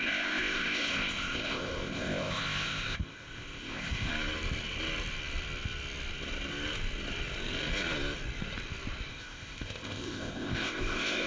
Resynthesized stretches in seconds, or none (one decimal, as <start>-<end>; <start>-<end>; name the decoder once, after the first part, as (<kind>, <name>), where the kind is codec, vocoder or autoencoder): 0.0-4.1 (codec, ZipCodec); 9.1-11.3